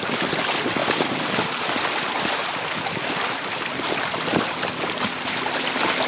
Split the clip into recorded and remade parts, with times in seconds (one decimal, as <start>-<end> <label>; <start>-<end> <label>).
0.0-6.1 recorded